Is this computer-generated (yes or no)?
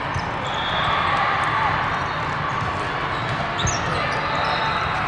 no